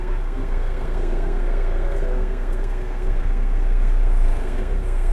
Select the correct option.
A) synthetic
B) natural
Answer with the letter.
A